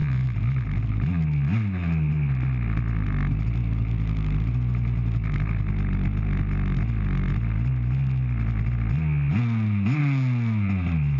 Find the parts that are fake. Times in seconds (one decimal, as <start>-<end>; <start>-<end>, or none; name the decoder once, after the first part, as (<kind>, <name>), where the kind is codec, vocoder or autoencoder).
none